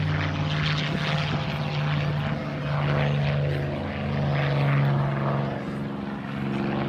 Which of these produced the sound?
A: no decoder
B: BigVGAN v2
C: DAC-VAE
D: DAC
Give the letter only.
A